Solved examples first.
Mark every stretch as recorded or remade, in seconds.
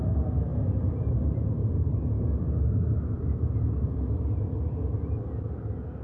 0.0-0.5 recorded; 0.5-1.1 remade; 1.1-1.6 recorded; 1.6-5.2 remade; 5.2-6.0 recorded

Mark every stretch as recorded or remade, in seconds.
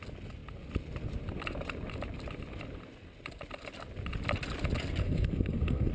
0.0-5.0 recorded; 5.0-5.9 remade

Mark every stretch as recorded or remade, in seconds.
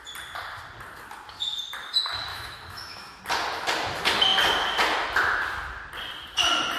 0.0-2.3 recorded; 2.3-3.2 remade; 3.2-6.8 recorded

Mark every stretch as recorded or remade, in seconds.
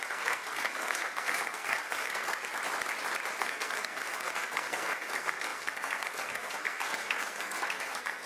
0.0-2.5 remade; 2.5-3.4 recorded; 3.4-8.3 remade